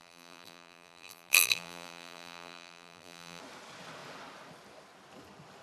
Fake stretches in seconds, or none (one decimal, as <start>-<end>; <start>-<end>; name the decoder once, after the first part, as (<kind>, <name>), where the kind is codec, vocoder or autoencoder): 0.0-3.4 (vocoder, BigVGAN v2)